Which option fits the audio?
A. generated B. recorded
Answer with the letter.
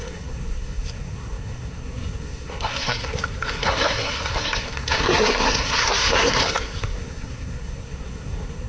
A